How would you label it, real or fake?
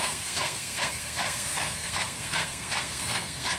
fake